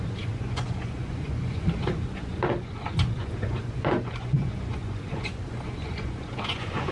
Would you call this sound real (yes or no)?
no